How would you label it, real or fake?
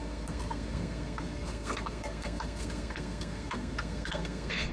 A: fake